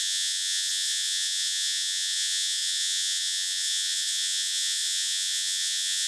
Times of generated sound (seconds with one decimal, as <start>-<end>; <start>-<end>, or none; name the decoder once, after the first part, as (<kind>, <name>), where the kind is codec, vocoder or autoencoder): 0.0-6.1 (vocoder, Vocos)

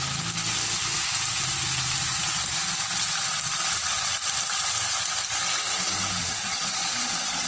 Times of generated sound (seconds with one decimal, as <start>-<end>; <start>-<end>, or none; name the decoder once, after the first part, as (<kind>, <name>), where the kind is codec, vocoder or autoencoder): 6.2-7.5 (vocoder, Vocos)

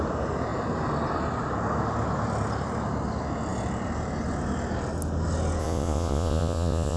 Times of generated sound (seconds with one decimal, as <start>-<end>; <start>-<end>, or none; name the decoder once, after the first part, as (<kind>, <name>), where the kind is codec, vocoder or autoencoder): 5.6-7.0 (vocoder, Vocos)

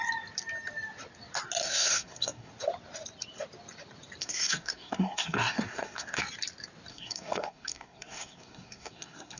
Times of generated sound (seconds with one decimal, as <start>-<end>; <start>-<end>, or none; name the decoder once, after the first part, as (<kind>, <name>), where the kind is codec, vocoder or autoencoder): 1.6-2.5 (codec, SNAC); 4.2-6.2; 6.9-9.4

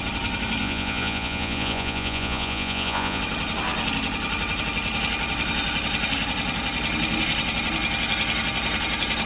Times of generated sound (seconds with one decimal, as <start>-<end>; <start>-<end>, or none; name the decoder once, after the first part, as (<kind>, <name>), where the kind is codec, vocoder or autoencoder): 0.6-3.2 (vocoder, Vocos)